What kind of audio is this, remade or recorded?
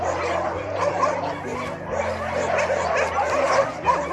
recorded